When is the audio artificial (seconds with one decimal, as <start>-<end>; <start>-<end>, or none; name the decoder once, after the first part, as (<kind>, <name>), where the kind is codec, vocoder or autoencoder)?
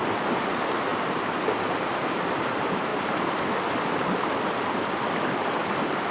none